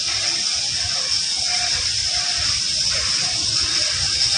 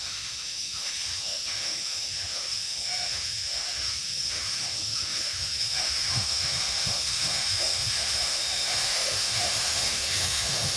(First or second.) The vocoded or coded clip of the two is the second